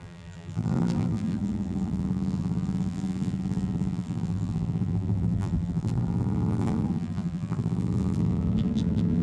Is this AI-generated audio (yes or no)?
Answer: yes